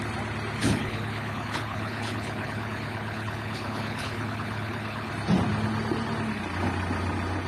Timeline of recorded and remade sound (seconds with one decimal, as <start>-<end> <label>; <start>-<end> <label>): 0.0-0.6 recorded; 0.6-5.1 remade; 5.1-7.5 recorded